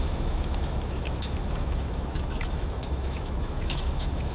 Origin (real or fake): fake